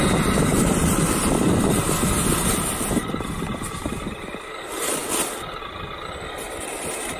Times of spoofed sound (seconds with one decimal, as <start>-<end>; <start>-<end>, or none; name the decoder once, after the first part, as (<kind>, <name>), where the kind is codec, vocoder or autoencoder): 0.5-1.8 (vocoder, BigVGAN v2)